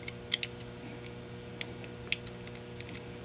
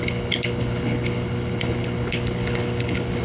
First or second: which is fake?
second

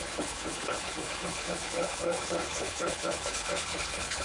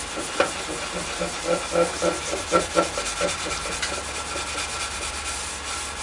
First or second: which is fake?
first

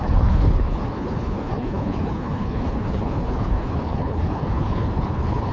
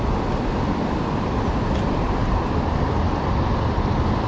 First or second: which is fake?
first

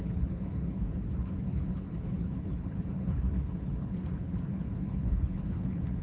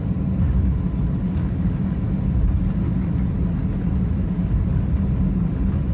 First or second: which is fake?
first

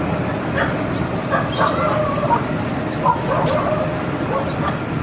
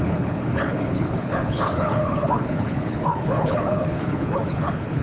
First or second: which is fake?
second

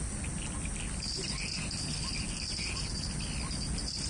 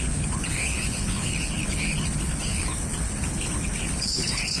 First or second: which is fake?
second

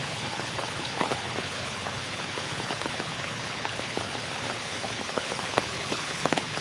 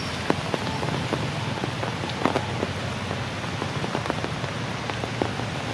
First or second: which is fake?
first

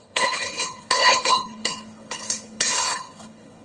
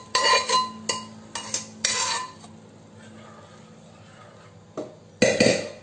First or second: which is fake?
first